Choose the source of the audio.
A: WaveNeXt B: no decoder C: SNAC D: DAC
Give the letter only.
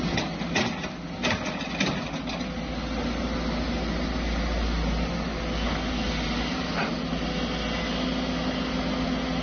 B